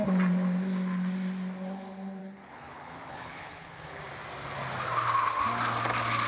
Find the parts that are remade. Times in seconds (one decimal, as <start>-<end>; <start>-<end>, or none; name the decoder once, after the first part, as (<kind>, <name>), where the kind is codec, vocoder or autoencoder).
2.2-4.0 (codec, HILCodec)